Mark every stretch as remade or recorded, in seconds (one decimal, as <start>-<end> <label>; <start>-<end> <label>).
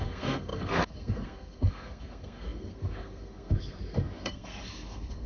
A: 0.0-5.3 remade